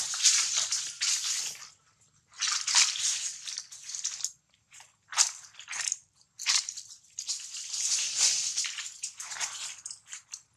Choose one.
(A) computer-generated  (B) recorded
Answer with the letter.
B